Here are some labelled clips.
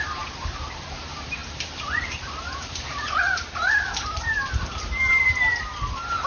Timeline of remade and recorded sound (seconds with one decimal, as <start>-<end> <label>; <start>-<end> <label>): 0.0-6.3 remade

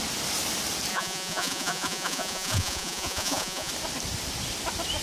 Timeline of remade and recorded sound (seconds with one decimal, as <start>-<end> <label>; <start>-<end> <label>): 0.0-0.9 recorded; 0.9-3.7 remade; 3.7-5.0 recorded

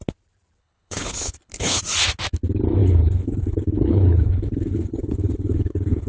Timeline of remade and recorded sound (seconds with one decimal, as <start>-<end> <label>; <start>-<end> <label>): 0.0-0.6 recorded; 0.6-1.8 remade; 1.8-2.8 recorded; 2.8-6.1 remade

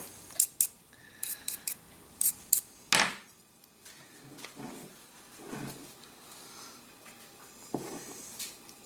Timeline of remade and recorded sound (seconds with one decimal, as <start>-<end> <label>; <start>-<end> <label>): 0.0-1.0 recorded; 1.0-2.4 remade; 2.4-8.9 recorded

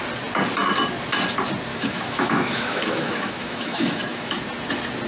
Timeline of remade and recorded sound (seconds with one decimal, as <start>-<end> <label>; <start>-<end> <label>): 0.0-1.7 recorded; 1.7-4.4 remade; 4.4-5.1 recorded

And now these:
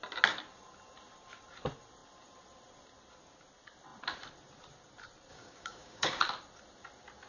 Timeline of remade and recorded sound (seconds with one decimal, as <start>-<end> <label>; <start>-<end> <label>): 0.0-5.3 recorded; 5.3-6.2 remade; 6.2-7.3 recorded

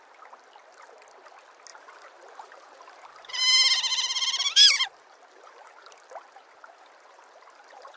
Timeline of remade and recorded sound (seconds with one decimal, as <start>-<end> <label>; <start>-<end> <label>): 0.0-1.7 recorded; 1.7-3.4 remade; 3.4-3.9 recorded; 3.9-8.0 remade